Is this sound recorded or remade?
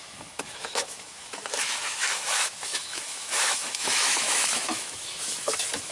remade